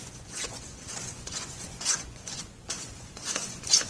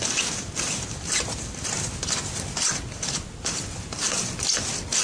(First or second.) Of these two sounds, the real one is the second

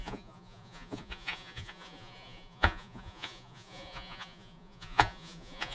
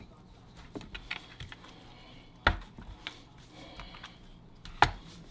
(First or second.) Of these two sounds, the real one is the second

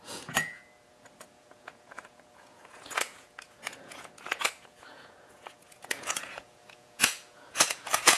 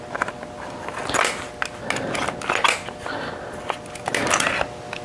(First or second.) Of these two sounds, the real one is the second